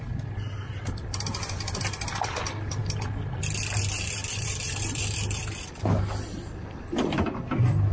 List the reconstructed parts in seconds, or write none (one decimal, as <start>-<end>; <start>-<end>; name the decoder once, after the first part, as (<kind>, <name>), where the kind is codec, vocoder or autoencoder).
4.2-5.7 (vocoder, BigVGAN v2)